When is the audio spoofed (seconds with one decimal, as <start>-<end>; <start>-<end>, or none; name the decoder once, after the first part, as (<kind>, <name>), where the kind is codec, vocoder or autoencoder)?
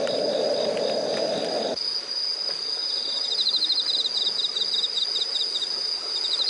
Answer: none